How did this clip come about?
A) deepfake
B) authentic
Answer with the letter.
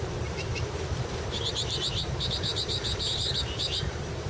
A